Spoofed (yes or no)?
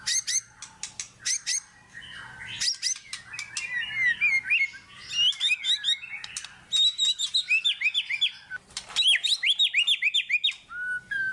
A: no